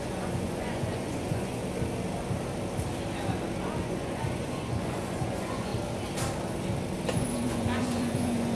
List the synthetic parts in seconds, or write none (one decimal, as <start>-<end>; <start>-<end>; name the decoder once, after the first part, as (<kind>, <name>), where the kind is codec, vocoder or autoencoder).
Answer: 0.0-1.6 (vocoder, Vocos); 3.8-5.7; 7.1-8.5